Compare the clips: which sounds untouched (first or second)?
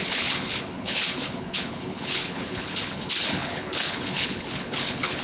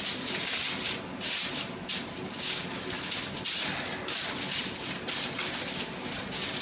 second